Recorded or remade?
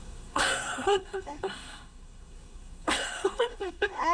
remade